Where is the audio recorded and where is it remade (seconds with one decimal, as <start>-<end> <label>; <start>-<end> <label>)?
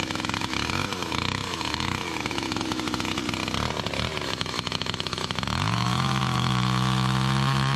0.0-3.2 remade; 3.2-4.3 recorded; 4.3-7.8 remade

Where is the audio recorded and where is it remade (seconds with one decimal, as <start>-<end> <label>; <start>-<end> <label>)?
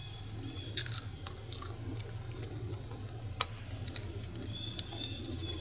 0.0-2.4 recorded; 2.4-3.2 remade; 3.2-5.6 recorded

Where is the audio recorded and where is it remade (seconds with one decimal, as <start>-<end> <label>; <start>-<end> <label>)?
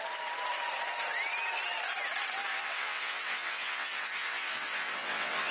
0.0-2.5 recorded; 2.5-5.5 remade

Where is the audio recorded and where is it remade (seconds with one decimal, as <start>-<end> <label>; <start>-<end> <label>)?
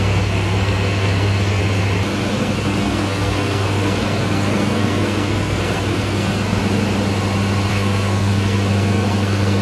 0.0-1.6 remade; 1.6-2.3 recorded; 2.3-6.6 remade; 6.6-7.7 recorded; 7.7-9.6 remade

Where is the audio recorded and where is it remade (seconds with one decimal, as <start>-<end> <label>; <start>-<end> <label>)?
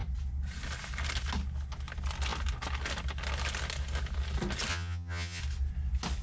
0.0-4.7 recorded; 4.7-5.4 remade; 5.4-6.2 recorded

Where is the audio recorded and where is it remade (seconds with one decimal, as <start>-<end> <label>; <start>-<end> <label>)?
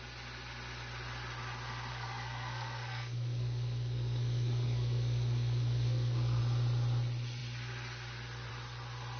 0.0-1.9 recorded; 1.9-6.4 remade; 6.4-9.2 recorded